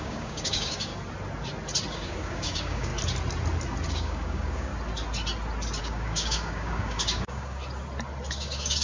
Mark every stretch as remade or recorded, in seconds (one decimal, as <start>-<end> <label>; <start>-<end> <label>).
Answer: 0.0-0.9 remade; 0.9-1.9 recorded; 1.9-2.9 remade; 2.9-3.9 recorded; 3.9-4.7 remade; 4.7-5.8 recorded; 5.8-7.6 remade; 7.6-8.3 recorded; 8.3-8.8 remade